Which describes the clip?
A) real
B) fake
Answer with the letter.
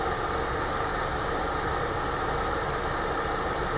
A